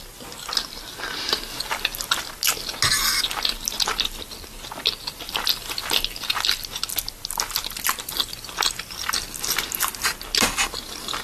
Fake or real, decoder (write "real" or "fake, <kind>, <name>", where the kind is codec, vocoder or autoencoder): real